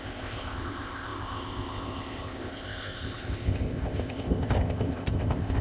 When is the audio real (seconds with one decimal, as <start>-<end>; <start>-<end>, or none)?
none